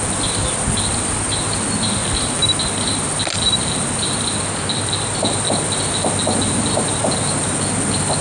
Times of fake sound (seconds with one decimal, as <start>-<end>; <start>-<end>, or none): none